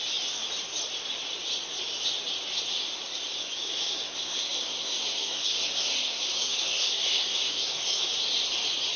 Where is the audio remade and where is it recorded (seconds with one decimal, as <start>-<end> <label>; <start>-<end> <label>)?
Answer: 0.0-3.4 recorded; 3.4-8.1 remade; 8.1-9.0 recorded